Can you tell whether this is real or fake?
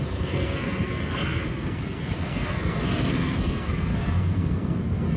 fake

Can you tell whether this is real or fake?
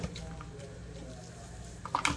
real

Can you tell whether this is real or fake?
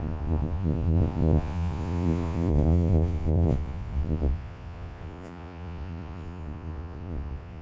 fake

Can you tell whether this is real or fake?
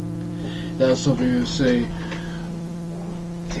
real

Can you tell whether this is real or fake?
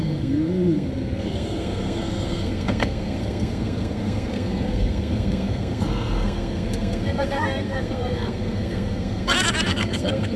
fake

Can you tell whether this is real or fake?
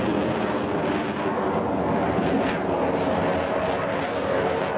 real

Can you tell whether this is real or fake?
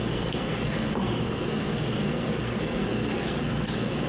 fake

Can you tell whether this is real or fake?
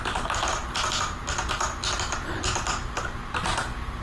real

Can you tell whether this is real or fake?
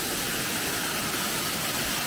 real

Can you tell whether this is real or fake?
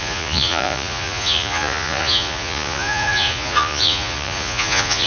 fake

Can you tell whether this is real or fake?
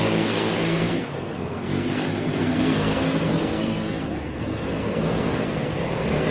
fake